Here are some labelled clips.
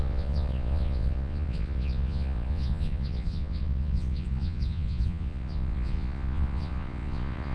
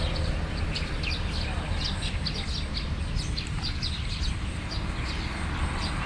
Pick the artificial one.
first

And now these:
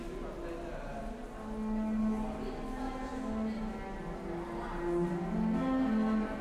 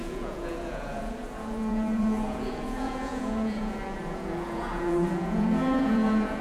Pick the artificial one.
second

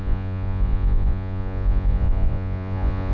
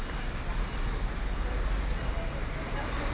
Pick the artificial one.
first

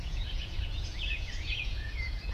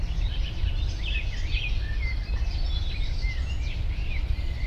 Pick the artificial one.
first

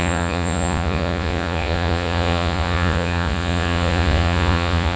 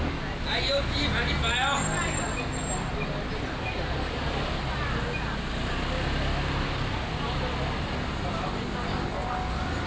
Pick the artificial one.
first